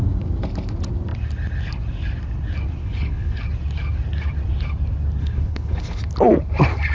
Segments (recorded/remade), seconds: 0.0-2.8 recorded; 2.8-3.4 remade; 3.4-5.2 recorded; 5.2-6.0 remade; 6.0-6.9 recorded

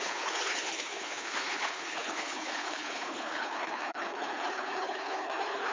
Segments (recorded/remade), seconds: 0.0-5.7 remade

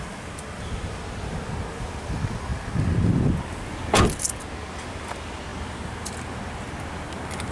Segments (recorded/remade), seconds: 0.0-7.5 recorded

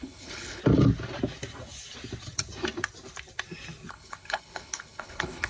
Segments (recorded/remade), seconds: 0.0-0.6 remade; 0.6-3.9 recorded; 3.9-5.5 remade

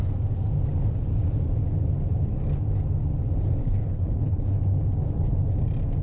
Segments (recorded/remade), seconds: 0.0-3.6 recorded; 3.6-4.6 remade; 4.6-6.0 recorded

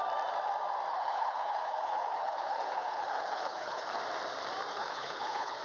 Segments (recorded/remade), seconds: 0.0-0.9 recorded; 0.9-4.0 remade; 4.0-4.7 recorded; 4.7-5.6 remade

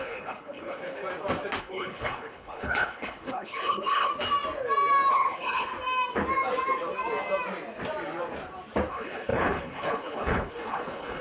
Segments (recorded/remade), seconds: 0.0-1.0 remade; 1.0-1.6 recorded; 1.6-4.1 remade; 4.1-5.1 recorded; 5.1-5.7 remade; 5.7-8.9 recorded; 8.9-11.2 remade